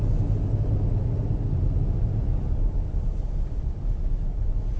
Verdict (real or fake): real